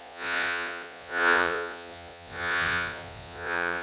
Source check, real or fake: fake